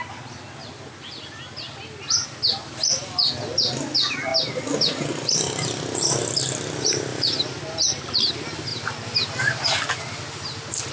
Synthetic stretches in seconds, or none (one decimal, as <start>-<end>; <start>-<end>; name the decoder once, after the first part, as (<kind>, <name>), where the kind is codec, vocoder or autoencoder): none